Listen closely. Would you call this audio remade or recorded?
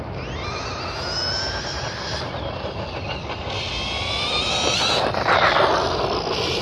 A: recorded